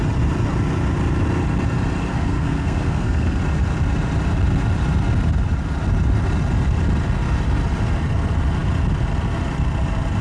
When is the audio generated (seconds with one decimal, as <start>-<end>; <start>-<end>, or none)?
2.1-3.4